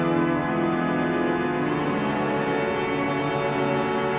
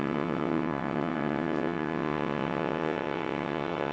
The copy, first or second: second